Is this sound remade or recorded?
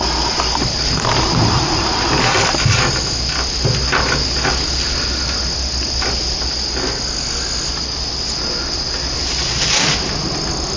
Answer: recorded